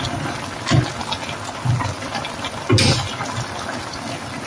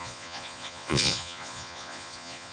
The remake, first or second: second